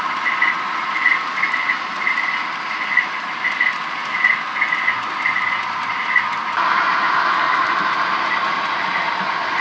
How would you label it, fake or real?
real